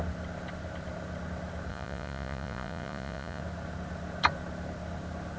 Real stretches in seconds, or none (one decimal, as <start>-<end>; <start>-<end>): 0.0-1.7; 3.4-5.4